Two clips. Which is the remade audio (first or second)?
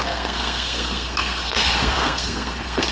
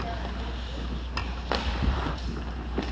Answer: first